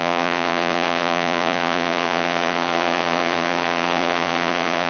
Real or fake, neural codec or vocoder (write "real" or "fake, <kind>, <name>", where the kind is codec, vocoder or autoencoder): fake, vocoder, Vocos